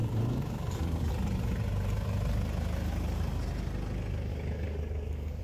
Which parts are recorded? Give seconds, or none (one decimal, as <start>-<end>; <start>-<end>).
1.1-4.3